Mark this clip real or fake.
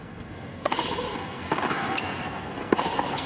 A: fake